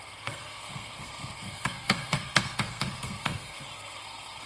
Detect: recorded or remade remade